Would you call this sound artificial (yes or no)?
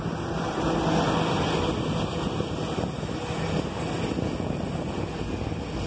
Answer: no